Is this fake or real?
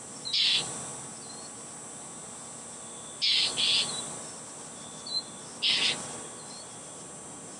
real